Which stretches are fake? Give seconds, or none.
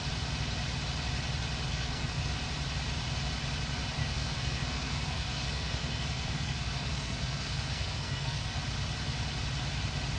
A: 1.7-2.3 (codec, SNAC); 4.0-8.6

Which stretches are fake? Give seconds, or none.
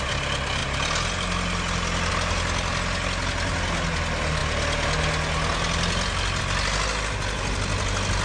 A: none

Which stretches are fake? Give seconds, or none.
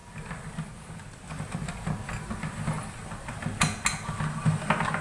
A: none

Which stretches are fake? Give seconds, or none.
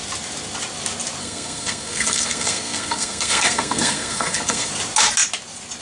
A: 1.2-4.7 (codec, SNAC)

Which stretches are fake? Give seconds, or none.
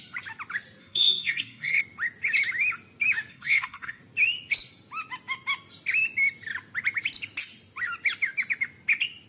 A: 0.8-1.8 (codec, SNAC); 3.3-4.0